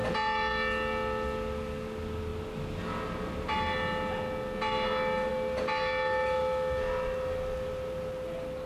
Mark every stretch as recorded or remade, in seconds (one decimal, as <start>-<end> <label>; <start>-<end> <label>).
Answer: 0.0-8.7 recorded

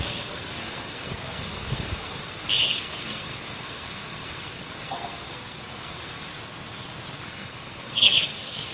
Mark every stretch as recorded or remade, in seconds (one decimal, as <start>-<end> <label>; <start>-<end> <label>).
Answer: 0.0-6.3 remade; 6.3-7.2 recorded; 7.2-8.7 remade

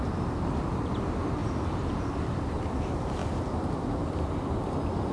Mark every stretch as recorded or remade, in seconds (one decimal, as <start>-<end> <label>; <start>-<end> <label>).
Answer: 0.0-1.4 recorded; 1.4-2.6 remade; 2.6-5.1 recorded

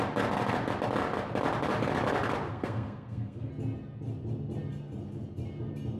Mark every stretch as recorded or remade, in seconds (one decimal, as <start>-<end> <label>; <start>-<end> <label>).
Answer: 0.0-2.5 recorded; 2.5-3.5 remade; 3.5-6.0 recorded

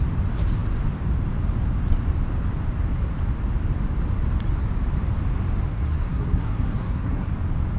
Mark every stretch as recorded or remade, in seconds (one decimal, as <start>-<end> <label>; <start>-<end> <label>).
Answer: 0.0-5.7 recorded; 5.7-7.3 remade; 7.3-7.8 recorded